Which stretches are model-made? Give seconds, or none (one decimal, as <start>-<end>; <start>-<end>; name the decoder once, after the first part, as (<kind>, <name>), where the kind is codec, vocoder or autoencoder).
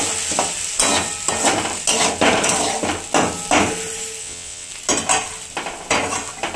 4.2-4.7 (vocoder, WaveNeXt)